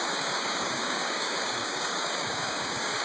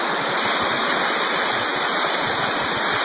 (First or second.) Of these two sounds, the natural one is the second